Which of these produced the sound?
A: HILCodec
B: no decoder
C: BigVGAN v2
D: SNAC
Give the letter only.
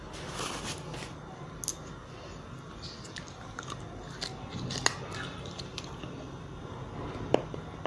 B